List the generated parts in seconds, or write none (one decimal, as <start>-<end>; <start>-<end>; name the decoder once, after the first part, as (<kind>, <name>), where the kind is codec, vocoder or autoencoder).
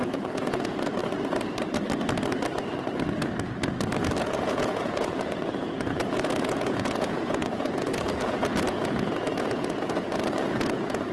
0.0-1.0 (vocoder, Vocos); 4.2-11.1